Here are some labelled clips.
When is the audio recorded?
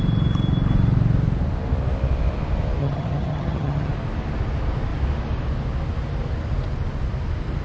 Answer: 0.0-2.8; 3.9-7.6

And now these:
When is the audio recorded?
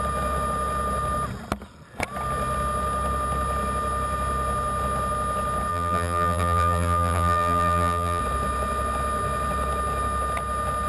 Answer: 0.0-5.7; 8.2-10.9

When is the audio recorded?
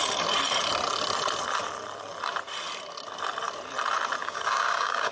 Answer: 0.0-4.2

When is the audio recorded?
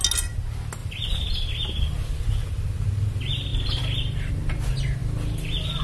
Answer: 0.0-5.8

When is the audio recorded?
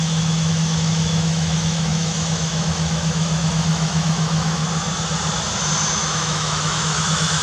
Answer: 4.6-5.9